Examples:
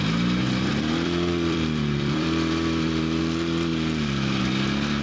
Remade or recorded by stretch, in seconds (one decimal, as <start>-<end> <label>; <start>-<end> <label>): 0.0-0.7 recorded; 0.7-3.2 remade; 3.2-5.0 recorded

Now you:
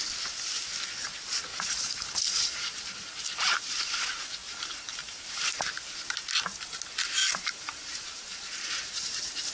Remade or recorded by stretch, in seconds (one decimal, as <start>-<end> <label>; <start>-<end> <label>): 0.0-1.5 recorded; 1.5-4.0 remade; 4.0-4.4 recorded; 4.4-5.7 remade; 5.7-7.2 recorded; 7.2-9.5 remade

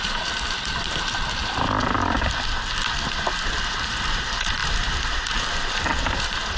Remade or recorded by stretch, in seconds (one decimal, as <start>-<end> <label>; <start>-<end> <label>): 0.0-1.4 remade; 1.4-3.0 recorded; 3.0-6.6 remade

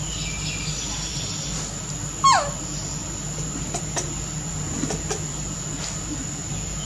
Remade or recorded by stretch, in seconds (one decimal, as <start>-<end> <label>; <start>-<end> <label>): 0.0-6.8 recorded